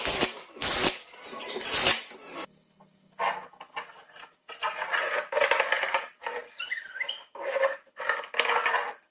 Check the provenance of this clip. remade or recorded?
recorded